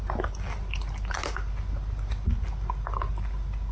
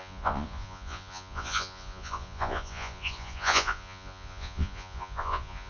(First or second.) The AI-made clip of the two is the second